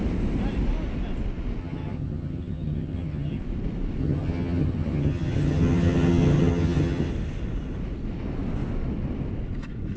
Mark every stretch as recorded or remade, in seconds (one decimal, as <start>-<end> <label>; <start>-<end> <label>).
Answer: 0.0-1.6 recorded; 1.6-3.4 remade; 3.4-4.0 recorded; 4.0-7.1 remade; 7.1-10.0 recorded